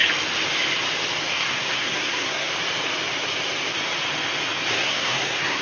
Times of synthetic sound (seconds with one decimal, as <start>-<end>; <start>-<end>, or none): 1.3-2.5; 4.7-5.6